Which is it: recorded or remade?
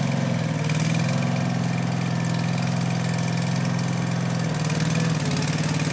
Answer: recorded